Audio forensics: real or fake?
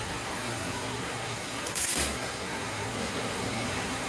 fake